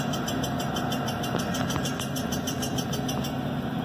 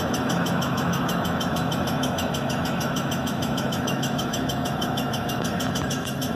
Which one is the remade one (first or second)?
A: second